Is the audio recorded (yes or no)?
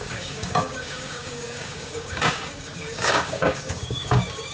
no